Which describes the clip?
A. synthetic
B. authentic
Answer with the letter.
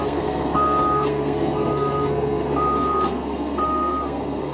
A